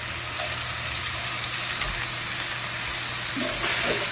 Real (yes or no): yes